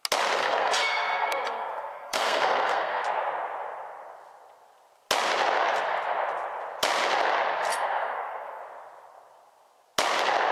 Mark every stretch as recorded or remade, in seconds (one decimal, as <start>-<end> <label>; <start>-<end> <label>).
0.0-0.4 recorded; 0.4-3.0 remade; 3.0-7.7 recorded; 7.7-8.6 remade; 8.6-10.5 recorded